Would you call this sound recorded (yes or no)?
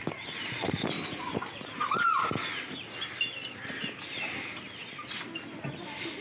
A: yes